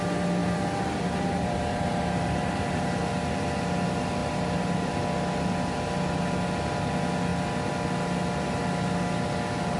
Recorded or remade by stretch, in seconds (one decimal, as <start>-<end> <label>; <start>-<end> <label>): 0.0-0.4 recorded; 0.4-3.1 remade; 3.1-4.2 recorded; 4.2-4.9 remade; 4.9-9.8 recorded